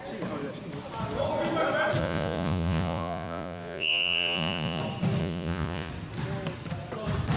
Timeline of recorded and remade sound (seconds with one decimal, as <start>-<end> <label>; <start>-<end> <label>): 0.0-2.0 recorded; 2.0-4.8 remade; 4.8-5.2 recorded; 5.2-5.9 remade; 5.9-7.4 recorded